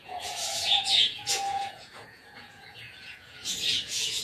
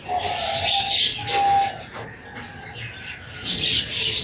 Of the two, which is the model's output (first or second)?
first